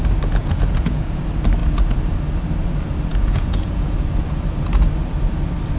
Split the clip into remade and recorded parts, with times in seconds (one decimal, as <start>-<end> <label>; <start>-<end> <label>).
0.0-0.4 recorded; 0.4-1.2 remade; 1.2-3.1 recorded; 3.1-3.9 remade; 3.9-5.8 recorded